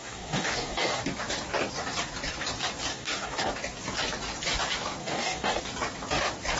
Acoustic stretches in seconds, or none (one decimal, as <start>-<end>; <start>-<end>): 1.0-2.9; 3.5-5.0; 5.6-6.6